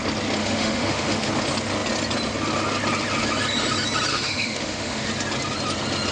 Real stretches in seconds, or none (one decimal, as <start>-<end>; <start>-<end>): 0.0-0.4; 1.3-4.1; 5.1-6.1